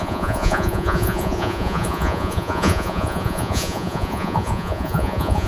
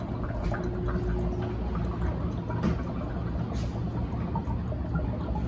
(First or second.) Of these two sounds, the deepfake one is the first